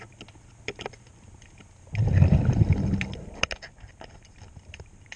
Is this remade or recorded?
recorded